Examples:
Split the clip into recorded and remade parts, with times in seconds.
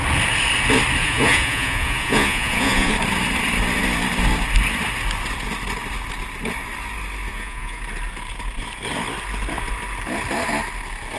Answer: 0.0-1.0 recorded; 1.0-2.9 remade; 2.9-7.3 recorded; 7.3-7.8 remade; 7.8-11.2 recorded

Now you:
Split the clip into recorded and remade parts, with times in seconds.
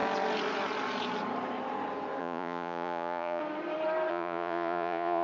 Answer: 0.0-2.2 recorded; 2.2-3.4 remade; 3.4-4.1 recorded; 4.1-5.2 remade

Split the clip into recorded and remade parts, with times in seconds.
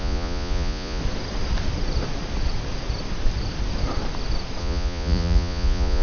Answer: 0.0-1.0 remade; 1.0-4.6 recorded; 4.6-6.0 remade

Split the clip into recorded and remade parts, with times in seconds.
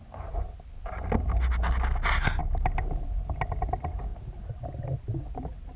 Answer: 0.0-5.8 recorded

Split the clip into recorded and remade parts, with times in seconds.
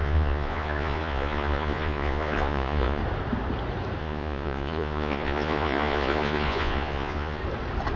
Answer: 0.0-3.0 remade; 3.0-4.0 recorded; 4.0-7.4 remade; 7.4-8.0 recorded